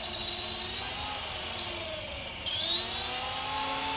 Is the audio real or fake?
real